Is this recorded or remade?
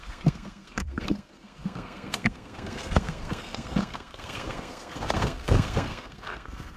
remade